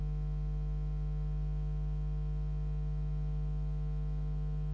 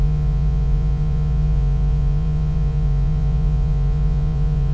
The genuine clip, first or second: first